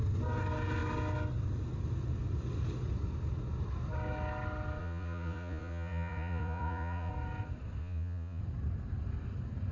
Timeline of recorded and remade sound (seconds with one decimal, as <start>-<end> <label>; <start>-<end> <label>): 0.0-4.8 recorded; 4.8-7.1 remade; 7.1-7.8 recorded; 7.8-8.4 remade; 8.4-9.7 recorded